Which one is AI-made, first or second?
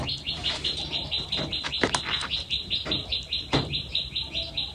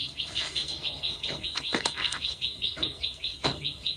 second